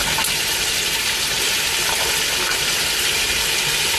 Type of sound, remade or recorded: recorded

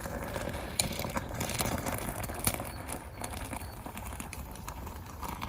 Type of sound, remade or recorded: remade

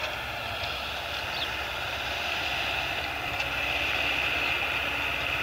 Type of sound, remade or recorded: recorded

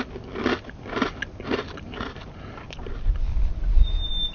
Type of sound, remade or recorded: recorded